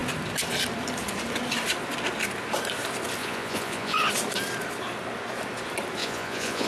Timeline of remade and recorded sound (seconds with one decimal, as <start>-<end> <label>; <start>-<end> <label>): 0.0-3.2 recorded; 3.2-4.1 remade; 4.1-6.0 recorded; 6.0-6.7 remade